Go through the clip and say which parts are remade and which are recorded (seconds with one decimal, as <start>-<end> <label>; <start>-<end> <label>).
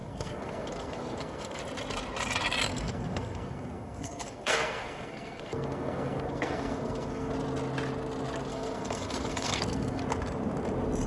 0.0-1.6 remade; 1.6-2.7 recorded; 2.7-7.3 remade; 7.3-8.5 recorded; 8.5-10.0 remade; 10.0-11.1 recorded